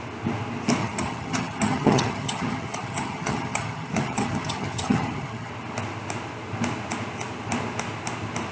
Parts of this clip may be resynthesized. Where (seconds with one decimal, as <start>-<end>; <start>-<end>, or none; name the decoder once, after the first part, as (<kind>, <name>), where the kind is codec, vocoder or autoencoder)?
0.8-5.5 (vocoder, HiFi-GAN)